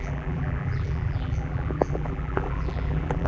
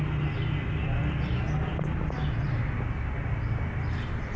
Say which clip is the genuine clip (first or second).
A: second